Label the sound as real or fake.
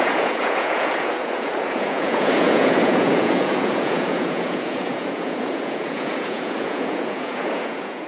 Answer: fake